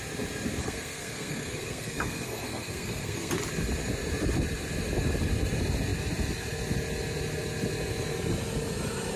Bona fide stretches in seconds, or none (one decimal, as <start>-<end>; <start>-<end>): 0.0-0.6; 3.3-9.2